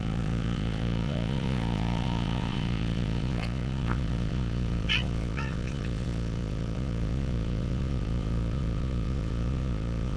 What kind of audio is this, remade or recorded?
remade